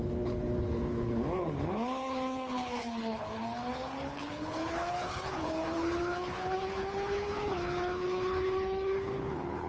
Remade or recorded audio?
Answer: remade